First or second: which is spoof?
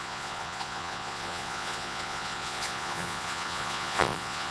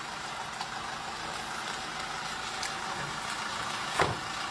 first